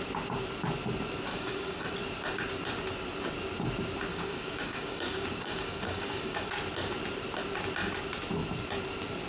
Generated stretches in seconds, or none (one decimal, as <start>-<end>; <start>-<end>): 1.3-1.9; 4.1-6.5